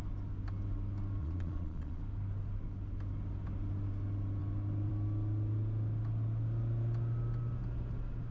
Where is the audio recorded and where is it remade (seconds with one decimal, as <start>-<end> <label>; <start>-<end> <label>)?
0.0-1.2 recorded; 1.2-2.0 remade; 2.0-8.3 recorded